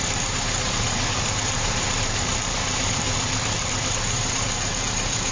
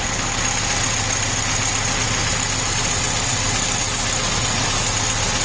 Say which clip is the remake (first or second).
first